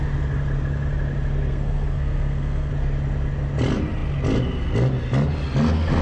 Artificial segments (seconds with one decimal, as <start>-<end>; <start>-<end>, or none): 1.5-2.7